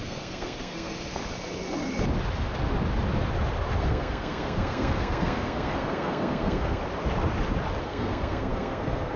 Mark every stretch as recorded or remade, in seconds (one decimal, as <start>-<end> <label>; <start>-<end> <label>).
0.0-1.2 remade; 1.2-3.8 recorded; 3.8-6.8 remade; 6.8-7.8 recorded; 7.8-9.2 remade